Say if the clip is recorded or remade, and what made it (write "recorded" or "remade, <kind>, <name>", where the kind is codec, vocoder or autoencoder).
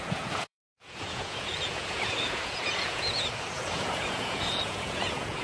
remade, vocoder, Vocos